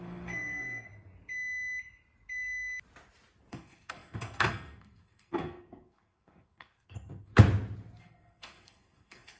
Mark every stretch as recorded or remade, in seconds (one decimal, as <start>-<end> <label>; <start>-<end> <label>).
0.0-0.9 remade; 0.9-3.5 recorded; 3.5-7.3 remade; 7.3-8.0 recorded; 8.0-9.4 remade